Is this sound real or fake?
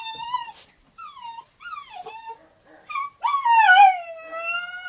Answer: real